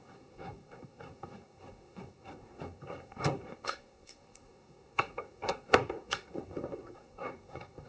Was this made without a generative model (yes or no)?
no